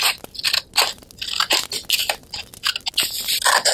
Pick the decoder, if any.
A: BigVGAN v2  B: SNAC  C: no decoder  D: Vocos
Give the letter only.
C